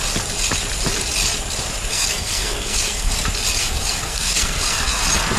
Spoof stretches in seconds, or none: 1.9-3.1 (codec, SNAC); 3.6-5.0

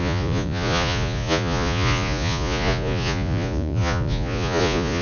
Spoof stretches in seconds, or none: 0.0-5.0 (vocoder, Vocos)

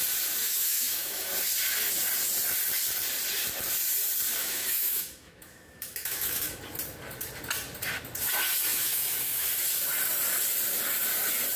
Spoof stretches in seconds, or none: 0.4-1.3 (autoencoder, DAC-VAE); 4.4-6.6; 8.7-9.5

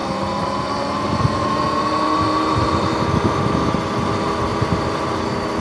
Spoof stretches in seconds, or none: 0.0-3.4 (vocoder, BigVGAN v2); 4.5-5.6

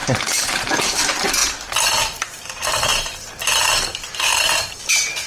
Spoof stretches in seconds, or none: 0.0-1.4 (vocoder, BigVGAN v2); 2.2-2.9; 3.9-4.3

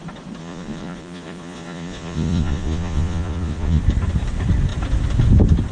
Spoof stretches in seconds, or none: 0.4-3.8 (vocoder, Vocos)